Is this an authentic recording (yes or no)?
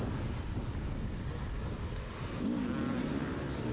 yes